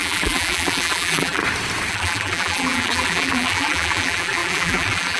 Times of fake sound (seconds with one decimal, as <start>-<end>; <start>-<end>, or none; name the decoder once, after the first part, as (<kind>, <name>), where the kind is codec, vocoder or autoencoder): 0.0-1.4 (vocoder, BigVGAN v2); 1.9-5.2